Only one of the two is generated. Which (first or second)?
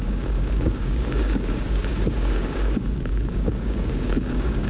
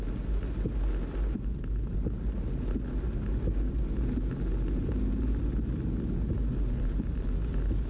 first